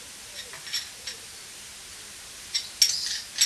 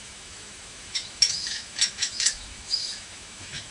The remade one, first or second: second